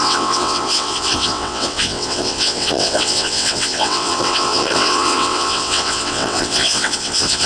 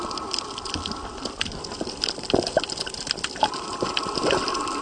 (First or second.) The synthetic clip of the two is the first